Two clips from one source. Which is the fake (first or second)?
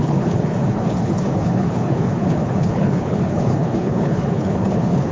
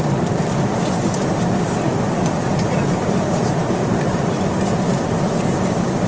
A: first